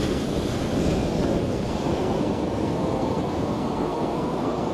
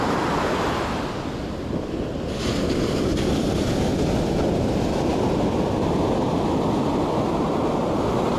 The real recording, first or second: second